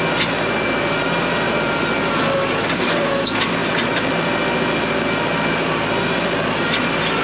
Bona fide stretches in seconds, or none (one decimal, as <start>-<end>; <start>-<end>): 0.0-7.2